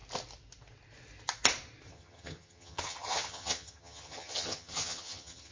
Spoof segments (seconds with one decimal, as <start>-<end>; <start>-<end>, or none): 1.9-5.5